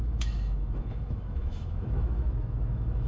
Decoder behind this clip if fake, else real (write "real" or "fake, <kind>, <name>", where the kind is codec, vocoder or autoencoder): fake, autoencoder, DAC-VAE